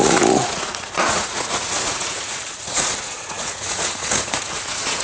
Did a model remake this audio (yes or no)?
yes